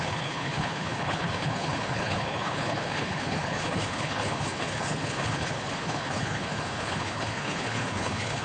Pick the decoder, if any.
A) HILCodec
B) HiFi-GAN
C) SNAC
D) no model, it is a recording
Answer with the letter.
A